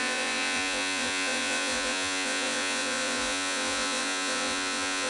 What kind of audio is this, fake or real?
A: fake